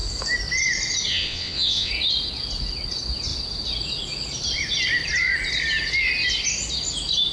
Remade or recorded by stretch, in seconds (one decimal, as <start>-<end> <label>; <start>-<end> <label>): 0.0-1.1 recorded; 1.1-1.9 remade; 1.9-7.3 recorded